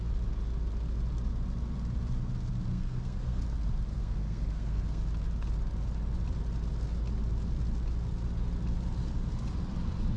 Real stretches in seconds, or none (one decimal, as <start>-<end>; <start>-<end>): 0.0-2.7; 3.4-3.9; 5.0-10.2